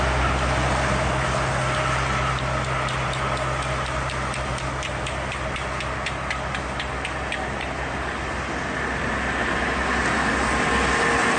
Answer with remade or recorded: recorded